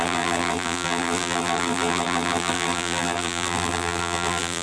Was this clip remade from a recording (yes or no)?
yes